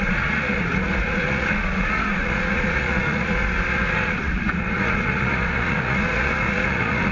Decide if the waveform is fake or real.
fake